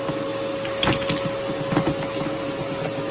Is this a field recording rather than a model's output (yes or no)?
yes